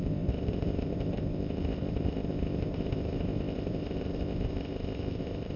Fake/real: fake